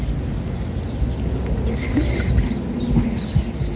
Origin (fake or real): real